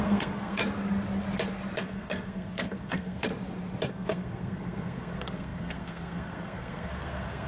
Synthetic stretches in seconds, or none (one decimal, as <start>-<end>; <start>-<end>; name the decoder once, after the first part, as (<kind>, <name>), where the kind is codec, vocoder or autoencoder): 0.0-0.6 (codec, SNAC); 1.8-3.2; 3.9-7.5

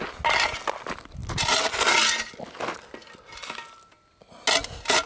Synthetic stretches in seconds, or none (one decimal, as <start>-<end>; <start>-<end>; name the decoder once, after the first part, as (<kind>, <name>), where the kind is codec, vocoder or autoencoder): none

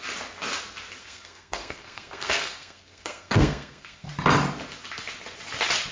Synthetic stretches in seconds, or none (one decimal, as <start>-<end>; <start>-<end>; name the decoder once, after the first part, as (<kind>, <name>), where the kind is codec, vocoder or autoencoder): 1.0-4.1 (codec, SNAC)

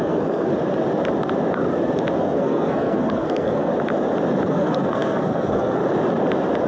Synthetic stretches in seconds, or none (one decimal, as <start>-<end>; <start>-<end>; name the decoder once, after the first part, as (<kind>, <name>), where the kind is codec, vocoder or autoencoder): 0.0-0.5 (codec, SNAC); 2.2-3.7; 4.5-5.8

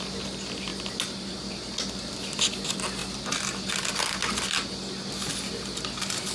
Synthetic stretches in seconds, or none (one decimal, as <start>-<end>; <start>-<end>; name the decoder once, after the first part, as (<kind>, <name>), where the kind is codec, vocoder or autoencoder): none